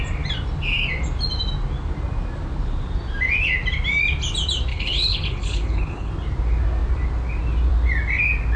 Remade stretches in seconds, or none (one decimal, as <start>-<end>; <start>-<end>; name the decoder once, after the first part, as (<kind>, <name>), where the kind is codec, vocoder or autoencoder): 4.7-6.1 (codec, HILCodec)

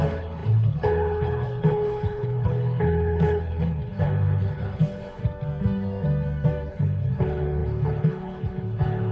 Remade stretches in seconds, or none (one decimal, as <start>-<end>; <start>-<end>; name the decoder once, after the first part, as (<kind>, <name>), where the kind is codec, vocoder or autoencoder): 0.0-5.2 (codec, HILCodec); 6.7-9.1

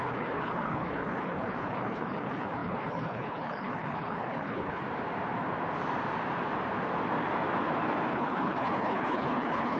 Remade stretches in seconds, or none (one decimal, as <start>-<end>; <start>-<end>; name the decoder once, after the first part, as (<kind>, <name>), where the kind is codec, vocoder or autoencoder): 0.0-4.8 (codec, HILCodec); 8.1-9.8

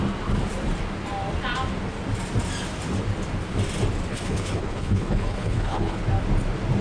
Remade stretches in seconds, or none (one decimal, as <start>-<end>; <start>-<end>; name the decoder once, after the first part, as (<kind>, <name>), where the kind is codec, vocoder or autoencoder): 4.1-6.0 (codec, HILCodec)

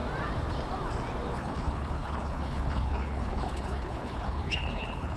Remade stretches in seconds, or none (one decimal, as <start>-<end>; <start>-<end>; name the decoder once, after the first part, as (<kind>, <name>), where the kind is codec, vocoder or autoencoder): 1.4-5.2 (codec, HILCodec)

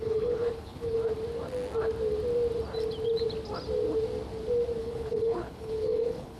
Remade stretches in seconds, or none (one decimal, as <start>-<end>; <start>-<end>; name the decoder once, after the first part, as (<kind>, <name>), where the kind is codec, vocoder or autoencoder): 0.0-1.0 (codec, HILCodec); 4.8-6.4